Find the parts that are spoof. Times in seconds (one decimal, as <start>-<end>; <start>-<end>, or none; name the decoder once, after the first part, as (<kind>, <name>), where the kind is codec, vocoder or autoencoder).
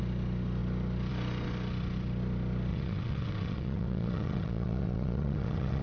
2.7-5.8 (vocoder, WaveNeXt)